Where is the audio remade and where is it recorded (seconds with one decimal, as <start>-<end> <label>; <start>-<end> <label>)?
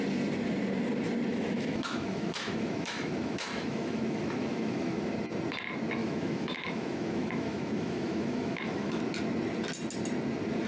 0.0-1.3 recorded; 1.3-5.1 remade; 5.1-6.0 recorded; 6.0-9.0 remade; 9.0-10.7 recorded